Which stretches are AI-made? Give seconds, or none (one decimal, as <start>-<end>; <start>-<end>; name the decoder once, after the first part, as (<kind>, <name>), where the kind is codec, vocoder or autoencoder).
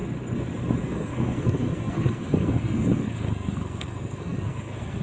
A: 0.8-5.0 (codec, SNAC)